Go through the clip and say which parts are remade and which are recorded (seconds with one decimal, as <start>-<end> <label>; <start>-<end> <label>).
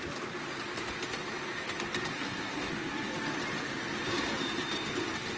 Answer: 0.0-2.1 recorded; 2.1-2.7 remade; 2.7-5.4 recorded